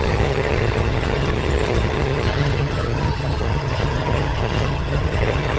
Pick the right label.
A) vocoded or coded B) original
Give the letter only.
A